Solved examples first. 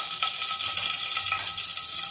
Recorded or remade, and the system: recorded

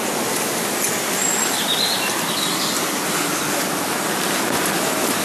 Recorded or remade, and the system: recorded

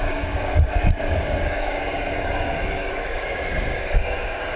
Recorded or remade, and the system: remade, codec, DAC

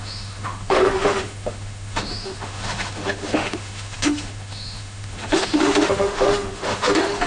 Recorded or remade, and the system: remade, autoencoder, DAC-VAE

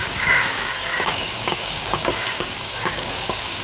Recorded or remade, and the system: remade, codec, DAC